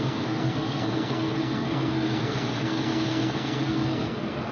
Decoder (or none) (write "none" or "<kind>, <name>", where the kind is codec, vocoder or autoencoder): codec, SNAC